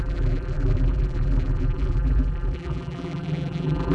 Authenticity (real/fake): fake